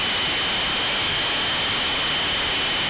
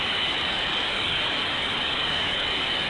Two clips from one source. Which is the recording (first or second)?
first